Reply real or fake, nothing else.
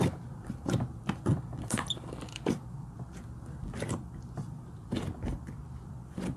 fake